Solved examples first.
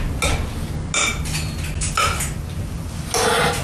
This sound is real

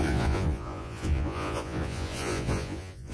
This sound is fake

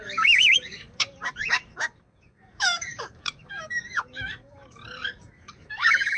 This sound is fake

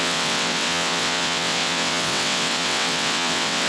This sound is fake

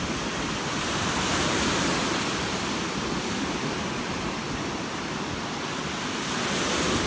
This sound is real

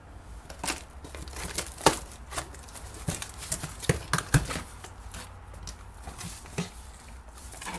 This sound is real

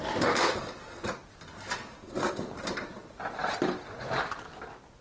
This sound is real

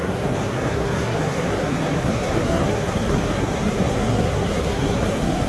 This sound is fake